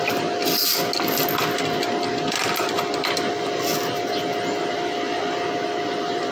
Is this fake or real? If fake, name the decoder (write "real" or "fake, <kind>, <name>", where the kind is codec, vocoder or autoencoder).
real